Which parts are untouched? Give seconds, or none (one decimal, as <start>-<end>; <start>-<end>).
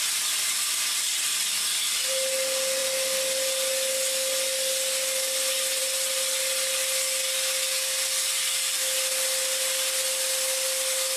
0.0-11.2